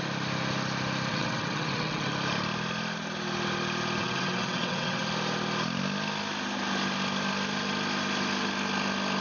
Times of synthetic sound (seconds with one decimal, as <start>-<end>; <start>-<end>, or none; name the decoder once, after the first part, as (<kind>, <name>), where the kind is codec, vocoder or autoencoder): 1.1-2.1 (vocoder, WaveNeXt); 4.0-5.0